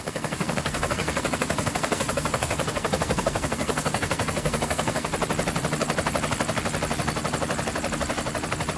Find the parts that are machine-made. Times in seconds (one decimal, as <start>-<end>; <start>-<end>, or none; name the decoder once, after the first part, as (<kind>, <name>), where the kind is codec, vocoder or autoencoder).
0.0-5.1 (codec, SNAC)

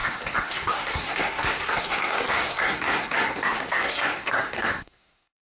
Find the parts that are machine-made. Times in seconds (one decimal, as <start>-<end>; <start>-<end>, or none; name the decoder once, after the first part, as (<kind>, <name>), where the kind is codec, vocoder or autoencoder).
0.0-5.4 (codec, SNAC)

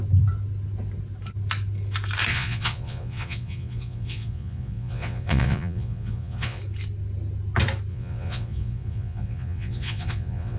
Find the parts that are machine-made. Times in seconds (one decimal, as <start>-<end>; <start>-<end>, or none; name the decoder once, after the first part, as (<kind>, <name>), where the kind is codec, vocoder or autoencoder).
2.3-6.6 (vocoder, Vocos); 7.9-10.6

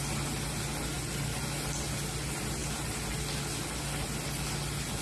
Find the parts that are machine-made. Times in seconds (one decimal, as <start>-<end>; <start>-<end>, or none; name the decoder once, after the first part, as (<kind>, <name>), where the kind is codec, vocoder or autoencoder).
none

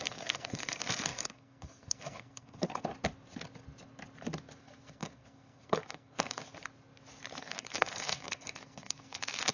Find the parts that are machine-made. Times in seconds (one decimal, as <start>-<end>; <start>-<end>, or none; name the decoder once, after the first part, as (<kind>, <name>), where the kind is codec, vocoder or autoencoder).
0.0-2.9 (codec, SNAC); 4.6-6.4; 7.4-9.5

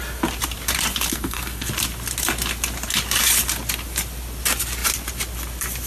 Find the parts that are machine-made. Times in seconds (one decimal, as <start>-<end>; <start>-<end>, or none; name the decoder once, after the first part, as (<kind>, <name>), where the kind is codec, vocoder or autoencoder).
1.1-1.7 (codec, SNAC)